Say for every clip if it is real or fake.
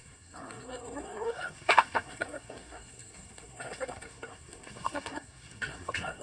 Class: fake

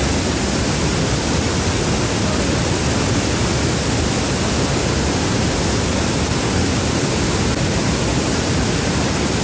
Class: real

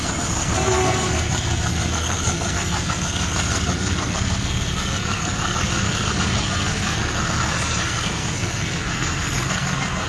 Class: fake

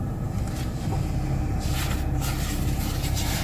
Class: real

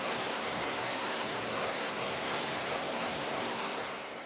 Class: fake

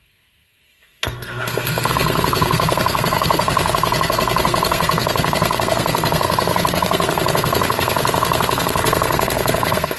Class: fake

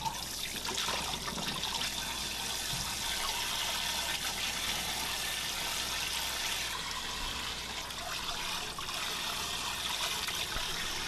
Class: real